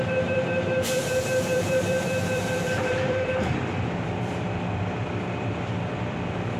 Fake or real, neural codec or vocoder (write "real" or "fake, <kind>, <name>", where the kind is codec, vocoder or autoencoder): fake, vocoder, BigVGAN v2